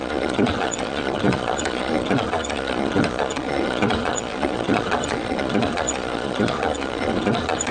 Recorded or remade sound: remade